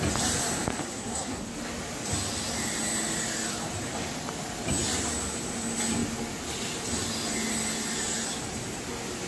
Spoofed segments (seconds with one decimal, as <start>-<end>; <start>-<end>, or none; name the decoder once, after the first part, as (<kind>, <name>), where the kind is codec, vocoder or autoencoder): 0.8-1.4 (codec, SNAC)